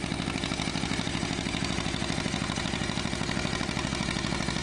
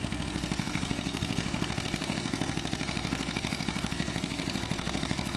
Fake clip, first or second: second